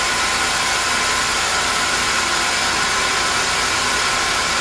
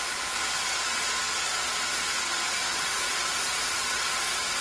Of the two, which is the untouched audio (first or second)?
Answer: first